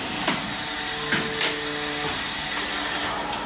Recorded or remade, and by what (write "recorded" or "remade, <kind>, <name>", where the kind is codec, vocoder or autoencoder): recorded